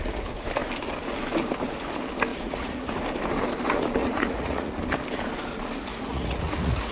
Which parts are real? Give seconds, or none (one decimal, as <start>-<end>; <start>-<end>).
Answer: 0.0-2.3; 2.9-4.0; 4.8-5.9